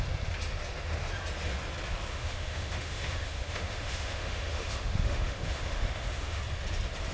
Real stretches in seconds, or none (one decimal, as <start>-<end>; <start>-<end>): 0.0-2.1; 6.4-7.1